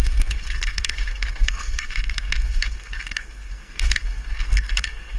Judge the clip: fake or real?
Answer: fake